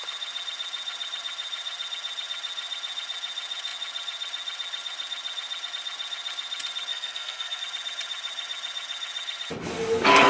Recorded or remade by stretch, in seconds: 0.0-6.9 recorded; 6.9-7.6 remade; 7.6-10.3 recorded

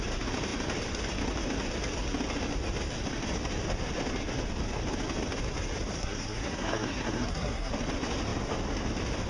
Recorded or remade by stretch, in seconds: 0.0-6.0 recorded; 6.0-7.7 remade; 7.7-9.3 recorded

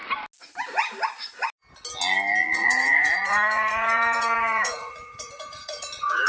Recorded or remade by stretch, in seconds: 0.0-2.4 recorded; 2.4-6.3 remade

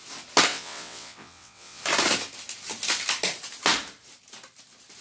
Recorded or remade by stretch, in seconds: 0.0-0.5 recorded; 0.5-1.8 remade; 1.8-5.0 recorded

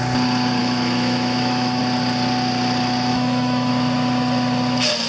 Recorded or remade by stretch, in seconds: 0.0-0.6 recorded; 0.6-1.8 remade; 1.8-3.1 recorded; 3.1-3.7 remade; 3.7-5.1 recorded

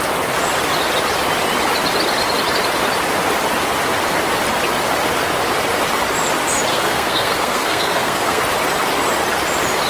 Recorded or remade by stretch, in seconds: 0.0-6.7 recorded; 6.7-8.4 remade; 8.4-9.9 recorded